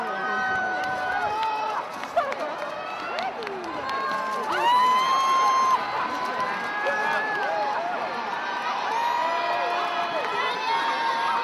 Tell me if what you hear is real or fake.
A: real